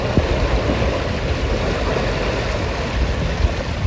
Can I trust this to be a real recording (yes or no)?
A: yes